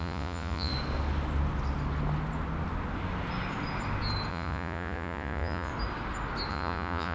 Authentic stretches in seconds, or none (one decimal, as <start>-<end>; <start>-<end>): 0.7-4.3; 5.7-6.5